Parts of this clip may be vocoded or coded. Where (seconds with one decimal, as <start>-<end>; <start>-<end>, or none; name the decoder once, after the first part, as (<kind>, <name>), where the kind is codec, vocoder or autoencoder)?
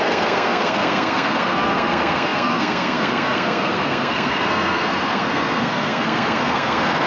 0.0-7.1 (codec, SNAC)